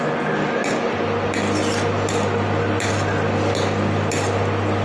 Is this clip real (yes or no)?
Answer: yes